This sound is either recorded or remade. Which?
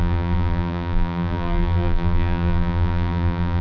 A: remade